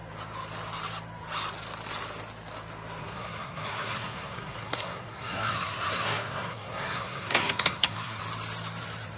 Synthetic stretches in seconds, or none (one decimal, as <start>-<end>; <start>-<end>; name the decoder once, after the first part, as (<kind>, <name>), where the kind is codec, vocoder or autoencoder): 3.0-8.2 (codec, SNAC)